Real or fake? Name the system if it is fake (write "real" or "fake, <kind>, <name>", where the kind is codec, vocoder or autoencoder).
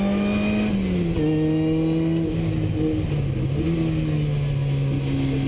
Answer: real